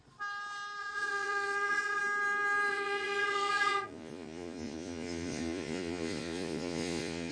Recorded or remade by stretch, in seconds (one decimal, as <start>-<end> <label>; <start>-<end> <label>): 0.0-0.8 recorded; 0.8-2.0 remade; 2.0-2.7 recorded; 2.7-7.3 remade